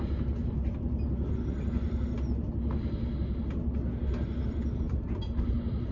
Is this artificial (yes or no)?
no